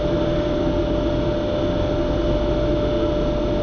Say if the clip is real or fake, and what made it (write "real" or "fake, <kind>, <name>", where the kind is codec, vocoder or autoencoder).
real